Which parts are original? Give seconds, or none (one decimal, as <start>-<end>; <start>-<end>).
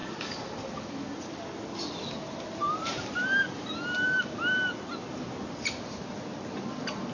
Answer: 0.0-2.6; 4.2-7.1